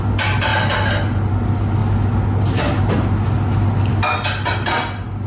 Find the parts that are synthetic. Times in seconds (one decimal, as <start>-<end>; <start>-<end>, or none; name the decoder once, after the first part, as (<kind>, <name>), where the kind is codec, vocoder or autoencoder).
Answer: none